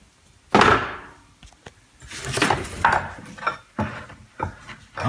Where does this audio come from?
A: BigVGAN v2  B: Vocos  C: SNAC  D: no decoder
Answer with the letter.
D